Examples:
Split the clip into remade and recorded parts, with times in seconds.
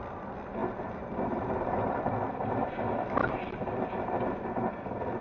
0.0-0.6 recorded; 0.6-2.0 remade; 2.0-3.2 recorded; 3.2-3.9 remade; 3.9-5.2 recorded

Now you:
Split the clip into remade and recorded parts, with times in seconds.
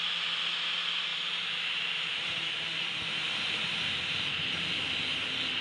0.0-1.1 recorded; 1.1-4.5 remade; 4.5-5.6 recorded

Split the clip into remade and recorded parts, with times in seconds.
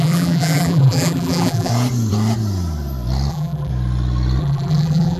0.0-1.7 remade; 1.7-3.3 recorded; 3.3-3.7 remade; 3.7-4.4 recorded; 4.4-5.2 remade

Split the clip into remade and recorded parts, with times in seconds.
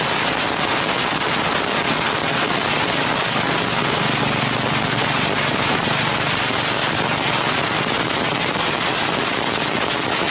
0.0-5.0 recorded; 5.0-6.0 remade; 6.0-10.3 recorded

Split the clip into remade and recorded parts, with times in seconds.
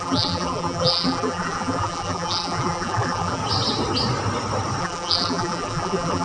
0.0-3.4 remade; 3.4-4.8 recorded; 4.8-6.2 remade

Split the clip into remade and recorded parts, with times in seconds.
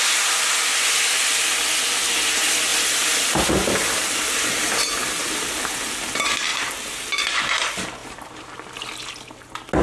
0.0-6.5 recorded; 6.5-7.2 remade; 7.2-8.0 recorded; 8.0-8.7 remade; 8.7-9.8 recorded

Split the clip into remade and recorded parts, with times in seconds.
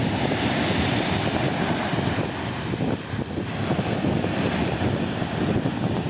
0.0-4.6 recorded; 4.6-5.2 remade; 5.2-6.1 recorded